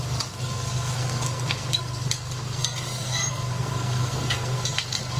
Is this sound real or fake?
fake